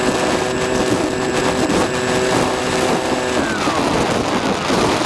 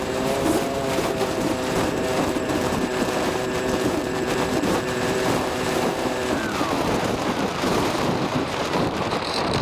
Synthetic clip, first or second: second